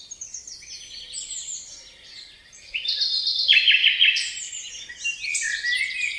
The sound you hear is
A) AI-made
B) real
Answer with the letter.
B